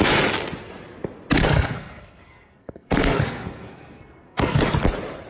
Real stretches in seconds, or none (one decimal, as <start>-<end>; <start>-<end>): 0.0-1.4; 4.6-5.3